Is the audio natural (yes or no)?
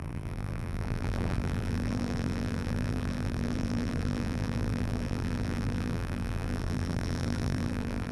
no